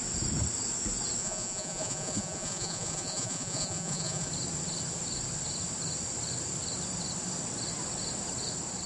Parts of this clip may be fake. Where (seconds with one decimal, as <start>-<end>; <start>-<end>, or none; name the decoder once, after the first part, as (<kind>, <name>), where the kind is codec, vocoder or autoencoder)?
1.2-4.3 (vocoder, Vocos)